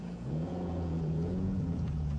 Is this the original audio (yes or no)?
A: no